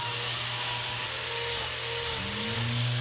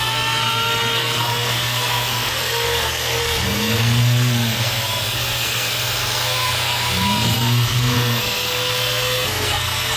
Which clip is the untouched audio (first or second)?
first